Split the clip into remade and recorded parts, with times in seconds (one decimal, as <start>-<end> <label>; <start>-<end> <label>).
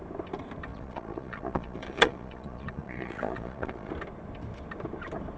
0.0-0.7 recorded; 0.7-3.9 remade; 3.9-5.4 recorded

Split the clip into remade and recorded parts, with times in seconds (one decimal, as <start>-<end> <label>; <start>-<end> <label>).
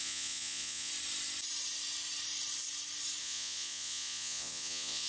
0.0-0.9 remade; 0.9-3.2 recorded; 3.2-5.1 remade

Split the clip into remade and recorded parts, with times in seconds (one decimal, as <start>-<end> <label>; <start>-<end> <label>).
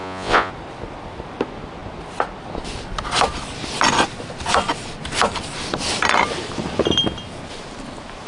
0.0-0.5 remade; 0.5-8.3 recorded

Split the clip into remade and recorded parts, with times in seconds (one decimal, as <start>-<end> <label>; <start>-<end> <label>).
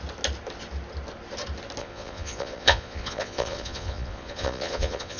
0.0-1.8 recorded; 1.8-5.2 remade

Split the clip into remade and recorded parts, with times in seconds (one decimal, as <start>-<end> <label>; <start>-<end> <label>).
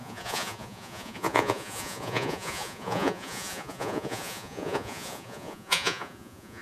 0.0-6.6 remade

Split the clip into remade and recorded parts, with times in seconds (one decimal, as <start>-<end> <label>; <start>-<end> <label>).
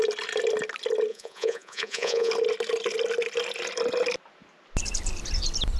0.0-1.1 recorded; 1.1-2.3 remade; 2.3-5.8 recorded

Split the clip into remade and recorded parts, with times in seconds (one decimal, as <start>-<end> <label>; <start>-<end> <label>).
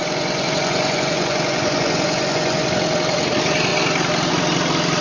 0.0-2.7 remade; 2.7-5.0 recorded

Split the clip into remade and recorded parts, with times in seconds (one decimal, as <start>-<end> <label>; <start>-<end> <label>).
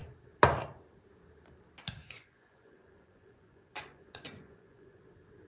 0.0-2.0 recorded; 2.0-5.0 remade; 5.0-5.5 recorded